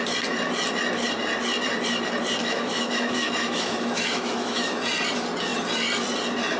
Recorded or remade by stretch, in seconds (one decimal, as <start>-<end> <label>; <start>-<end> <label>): 0.0-2.4 recorded; 2.4-4.8 remade; 4.8-6.6 recorded